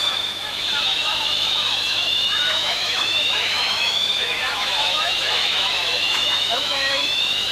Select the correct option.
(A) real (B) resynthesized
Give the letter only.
B